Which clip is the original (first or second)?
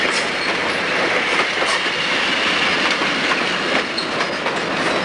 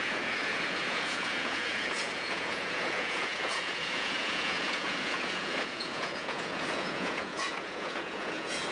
first